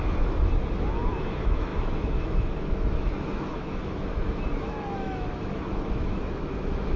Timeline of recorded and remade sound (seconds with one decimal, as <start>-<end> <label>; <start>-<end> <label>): 0.0-7.0 remade